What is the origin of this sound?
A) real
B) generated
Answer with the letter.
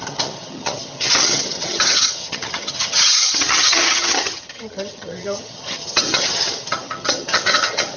B